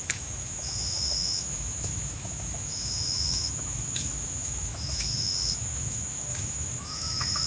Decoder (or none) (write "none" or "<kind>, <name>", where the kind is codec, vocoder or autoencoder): autoencoder, DAC-VAE